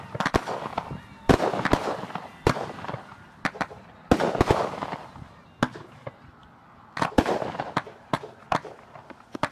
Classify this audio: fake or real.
real